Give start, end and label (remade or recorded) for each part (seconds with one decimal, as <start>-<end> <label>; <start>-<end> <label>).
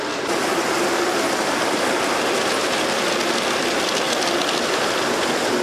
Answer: 0.0-0.4 recorded; 0.4-3.8 remade; 3.8-5.6 recorded